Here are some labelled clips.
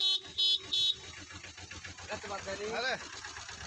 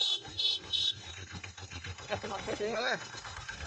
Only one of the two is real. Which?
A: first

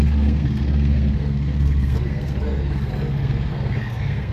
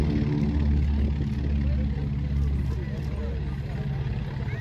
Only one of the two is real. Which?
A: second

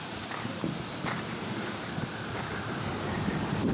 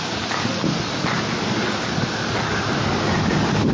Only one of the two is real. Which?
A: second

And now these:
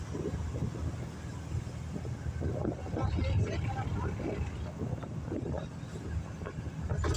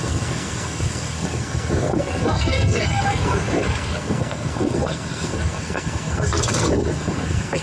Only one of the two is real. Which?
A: first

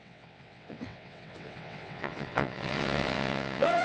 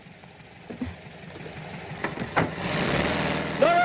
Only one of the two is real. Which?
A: second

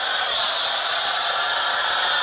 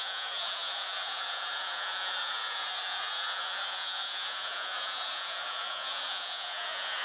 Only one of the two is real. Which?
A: first